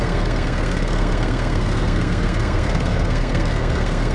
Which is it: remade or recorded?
remade